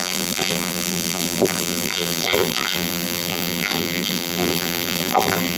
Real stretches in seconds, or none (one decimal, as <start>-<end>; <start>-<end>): none